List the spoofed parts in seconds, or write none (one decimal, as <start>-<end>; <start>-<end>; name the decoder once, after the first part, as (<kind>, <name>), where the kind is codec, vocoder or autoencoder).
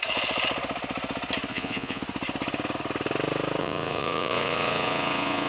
1.5-2.0 (vocoder, Vocos); 3.6-5.5